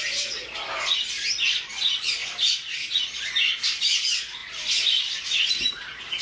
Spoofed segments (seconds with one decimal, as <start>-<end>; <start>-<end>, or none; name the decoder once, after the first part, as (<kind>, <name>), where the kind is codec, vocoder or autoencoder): none